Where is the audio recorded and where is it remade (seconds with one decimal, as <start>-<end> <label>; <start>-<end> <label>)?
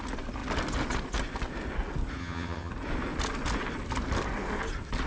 0.0-2.2 recorded; 2.2-2.7 remade; 2.7-5.1 recorded